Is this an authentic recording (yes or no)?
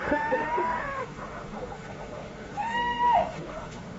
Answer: no